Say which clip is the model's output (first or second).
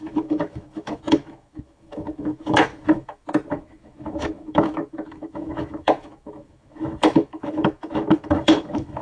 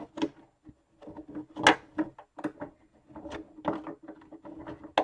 first